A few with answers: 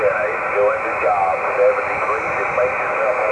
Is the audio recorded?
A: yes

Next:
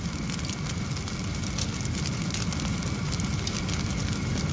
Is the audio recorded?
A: yes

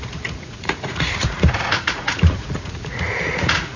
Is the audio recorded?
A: no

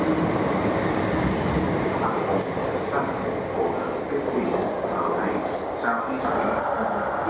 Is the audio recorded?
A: yes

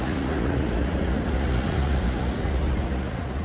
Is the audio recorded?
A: no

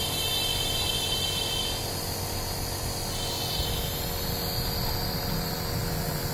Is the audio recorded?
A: yes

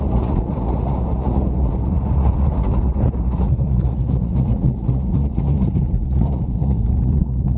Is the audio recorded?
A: no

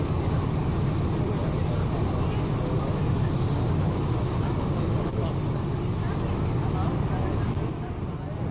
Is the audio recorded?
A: yes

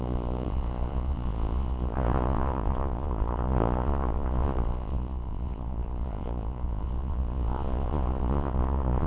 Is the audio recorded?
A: no